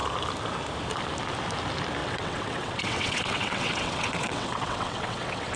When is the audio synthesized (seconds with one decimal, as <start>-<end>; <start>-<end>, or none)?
2.0-5.6